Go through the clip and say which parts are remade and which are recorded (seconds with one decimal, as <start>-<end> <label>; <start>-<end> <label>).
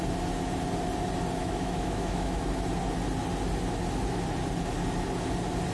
0.0-1.4 recorded; 1.4-2.4 remade; 2.4-5.7 recorded